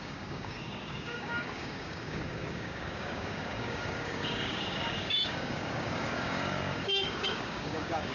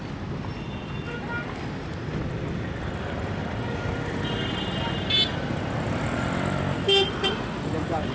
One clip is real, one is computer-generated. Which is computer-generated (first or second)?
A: first